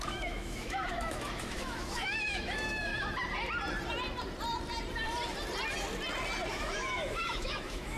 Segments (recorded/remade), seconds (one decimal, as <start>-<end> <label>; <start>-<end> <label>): 0.0-2.9 remade; 2.9-6.5 recorded; 6.5-8.0 remade